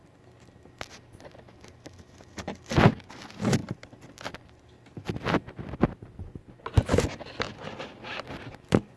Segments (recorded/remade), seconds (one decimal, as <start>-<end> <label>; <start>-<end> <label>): 0.0-9.0 recorded